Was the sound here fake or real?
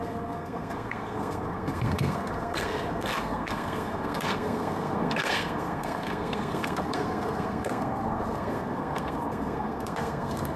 fake